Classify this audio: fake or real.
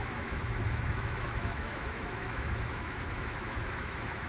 fake